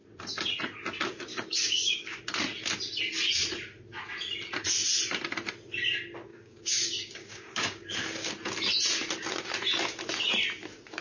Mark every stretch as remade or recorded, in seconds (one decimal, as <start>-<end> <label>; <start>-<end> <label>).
0.0-1.3 recorded; 1.3-2.2 remade; 2.2-6.3 recorded; 6.3-8.3 remade; 8.3-11.0 recorded